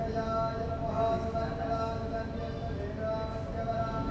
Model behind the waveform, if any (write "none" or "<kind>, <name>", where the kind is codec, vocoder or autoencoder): none